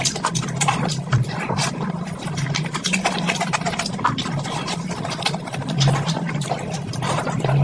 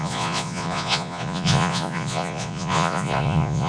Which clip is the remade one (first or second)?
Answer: second